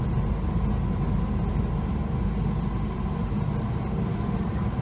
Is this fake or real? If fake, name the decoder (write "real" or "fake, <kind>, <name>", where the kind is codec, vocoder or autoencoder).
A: real